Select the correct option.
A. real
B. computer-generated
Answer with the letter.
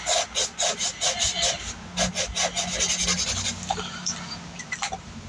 A